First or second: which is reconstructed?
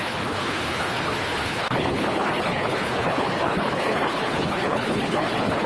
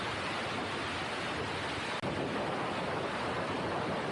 first